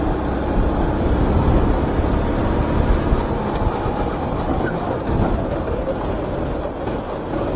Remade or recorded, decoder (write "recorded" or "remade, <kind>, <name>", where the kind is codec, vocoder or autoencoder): recorded